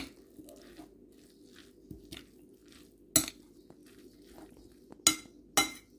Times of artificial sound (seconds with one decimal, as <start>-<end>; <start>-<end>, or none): none